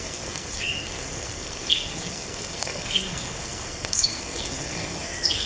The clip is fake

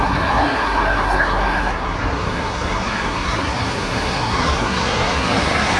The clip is fake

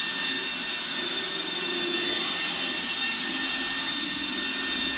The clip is real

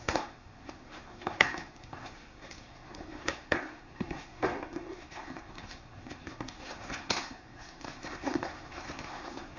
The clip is fake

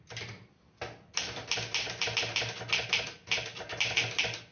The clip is real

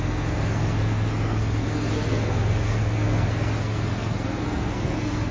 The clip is fake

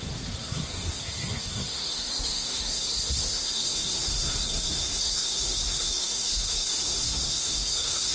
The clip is fake